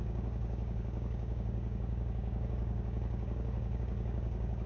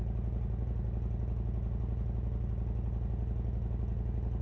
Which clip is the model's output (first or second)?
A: first